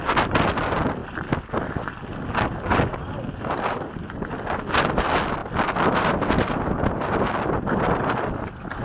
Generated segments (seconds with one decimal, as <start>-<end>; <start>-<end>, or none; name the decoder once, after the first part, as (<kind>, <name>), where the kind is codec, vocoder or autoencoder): none